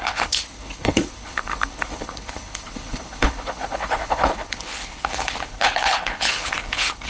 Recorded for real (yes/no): no